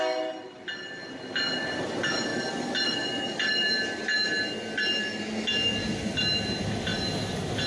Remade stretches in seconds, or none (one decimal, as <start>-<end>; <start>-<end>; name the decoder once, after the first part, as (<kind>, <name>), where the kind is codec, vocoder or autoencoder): none